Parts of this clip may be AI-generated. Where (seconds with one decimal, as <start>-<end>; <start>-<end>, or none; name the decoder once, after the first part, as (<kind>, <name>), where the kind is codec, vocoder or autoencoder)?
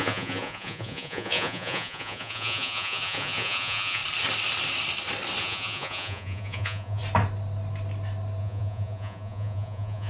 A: 0.0-4.0 (vocoder, Vocos); 5.4-7.0; 8.4-10.1